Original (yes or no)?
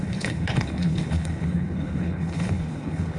no